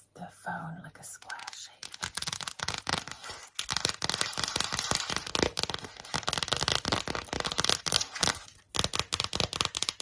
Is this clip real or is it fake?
real